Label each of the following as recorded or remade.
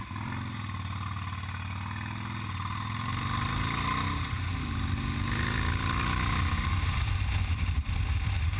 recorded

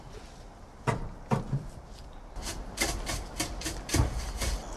recorded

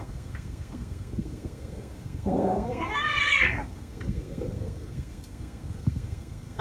remade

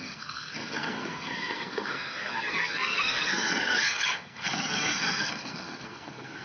remade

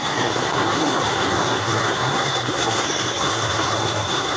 remade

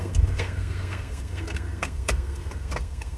remade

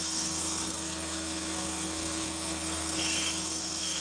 remade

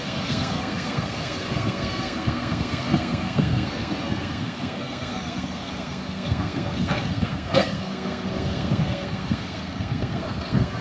remade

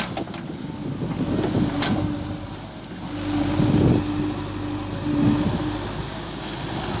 recorded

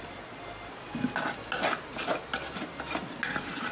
recorded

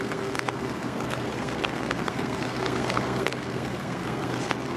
remade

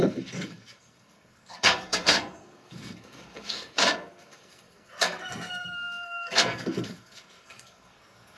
remade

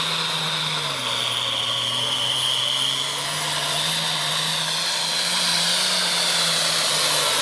recorded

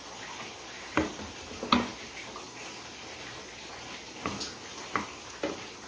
recorded